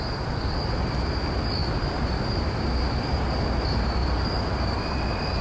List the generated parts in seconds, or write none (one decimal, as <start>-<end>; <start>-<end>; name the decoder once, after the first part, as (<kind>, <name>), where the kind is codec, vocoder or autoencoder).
1.6-2.5 (vocoder, BigVGAN v2); 4.0-5.4